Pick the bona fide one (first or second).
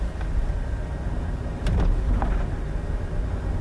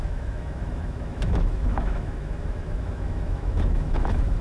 first